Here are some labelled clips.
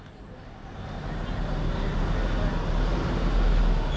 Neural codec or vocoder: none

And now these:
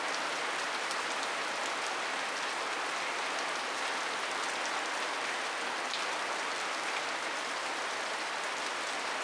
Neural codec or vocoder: none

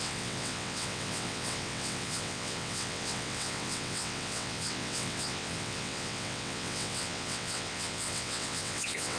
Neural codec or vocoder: vocoder, WaveNeXt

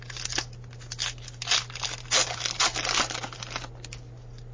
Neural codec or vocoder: none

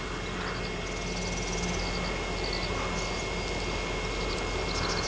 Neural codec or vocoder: none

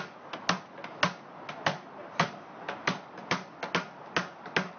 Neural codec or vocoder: none